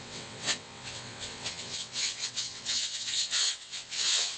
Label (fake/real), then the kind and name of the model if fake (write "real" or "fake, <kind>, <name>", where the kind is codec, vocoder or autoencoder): fake, vocoder, WaveNeXt